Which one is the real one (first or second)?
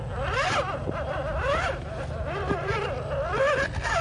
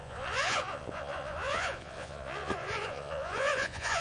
first